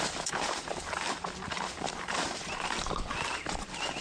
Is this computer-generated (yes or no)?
yes